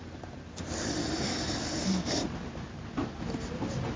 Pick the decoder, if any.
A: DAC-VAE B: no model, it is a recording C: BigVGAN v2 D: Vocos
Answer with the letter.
B